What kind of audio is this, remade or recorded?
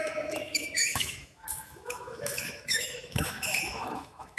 remade